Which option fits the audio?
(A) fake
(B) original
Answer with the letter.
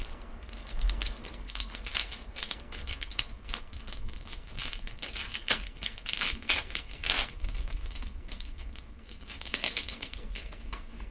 A